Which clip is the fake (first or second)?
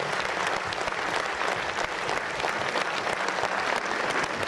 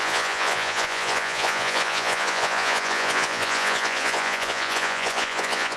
second